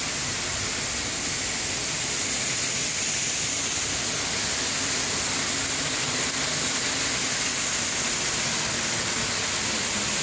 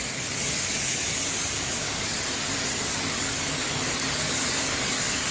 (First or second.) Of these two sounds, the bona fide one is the first